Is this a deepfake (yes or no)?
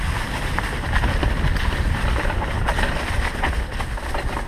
no